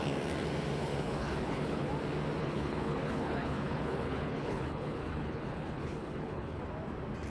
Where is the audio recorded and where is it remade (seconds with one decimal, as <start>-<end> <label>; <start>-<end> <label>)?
0.0-0.8 recorded; 0.8-1.9 remade; 1.9-2.4 recorded; 2.4-6.6 remade; 6.6-7.3 recorded

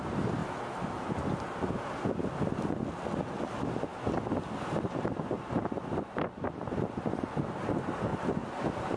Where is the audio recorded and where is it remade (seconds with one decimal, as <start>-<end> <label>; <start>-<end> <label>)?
0.0-9.0 recorded

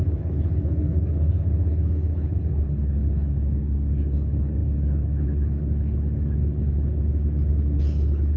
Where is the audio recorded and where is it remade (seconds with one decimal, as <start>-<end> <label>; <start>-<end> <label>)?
0.0-8.4 remade